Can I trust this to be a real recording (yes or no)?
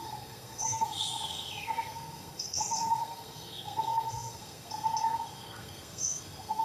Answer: no